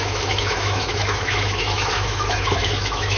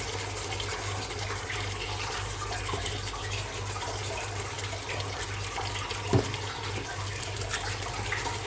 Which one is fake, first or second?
first